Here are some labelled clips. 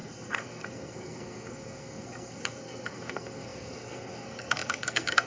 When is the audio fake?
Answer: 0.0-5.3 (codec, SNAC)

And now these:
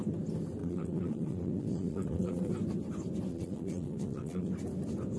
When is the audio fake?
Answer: 0.6-2.5 (vocoder, Vocos); 3.3-4.5

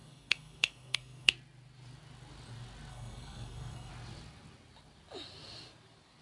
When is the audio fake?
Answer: 0.0-1.3 (codec, SNAC); 2.9-3.9

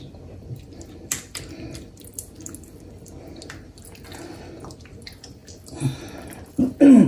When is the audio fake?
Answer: none

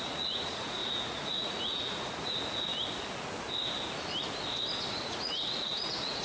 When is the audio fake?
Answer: 0.0-2.7 (vocoder, Vocos); 5.0-6.2